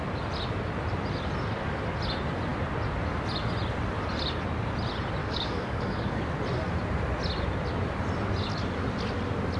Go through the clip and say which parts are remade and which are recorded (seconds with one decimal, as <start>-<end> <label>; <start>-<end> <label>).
0.0-5.2 recorded; 5.2-6.2 remade; 6.2-9.6 recorded

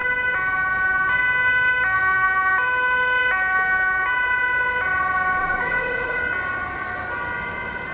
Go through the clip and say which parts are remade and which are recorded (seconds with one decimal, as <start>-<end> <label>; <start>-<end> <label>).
0.0-5.4 recorded; 5.4-6.2 remade; 6.2-7.9 recorded

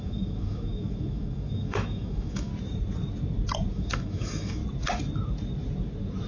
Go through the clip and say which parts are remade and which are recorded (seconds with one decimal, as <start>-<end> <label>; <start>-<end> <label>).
0.0-2.5 remade; 2.5-3.7 recorded; 3.7-4.6 remade; 4.6-6.3 recorded

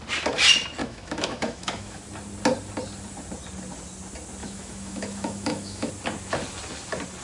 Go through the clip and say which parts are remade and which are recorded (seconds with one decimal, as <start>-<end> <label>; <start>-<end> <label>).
0.0-0.8 recorded; 0.8-2.0 remade; 2.0-4.4 recorded; 4.4-5.9 remade; 5.9-7.2 recorded